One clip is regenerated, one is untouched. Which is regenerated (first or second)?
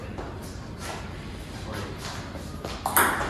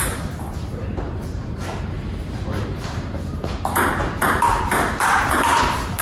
second